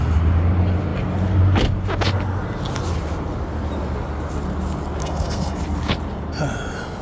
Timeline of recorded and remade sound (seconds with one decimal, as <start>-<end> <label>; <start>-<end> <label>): 0.0-5.0 recorded; 5.0-5.6 remade; 5.6-7.0 recorded